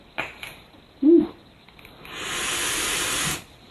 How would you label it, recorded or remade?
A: recorded